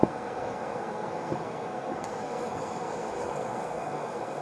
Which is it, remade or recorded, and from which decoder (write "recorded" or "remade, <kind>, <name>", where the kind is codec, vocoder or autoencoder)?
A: remade, codec, SNAC